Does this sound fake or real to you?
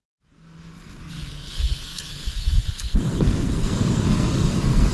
fake